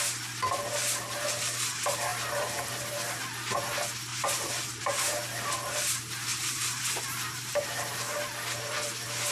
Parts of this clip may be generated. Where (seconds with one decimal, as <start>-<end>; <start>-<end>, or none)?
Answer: 4.1-4.8; 6.3-7.6